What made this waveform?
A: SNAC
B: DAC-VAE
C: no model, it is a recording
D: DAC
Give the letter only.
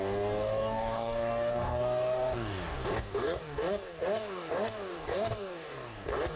D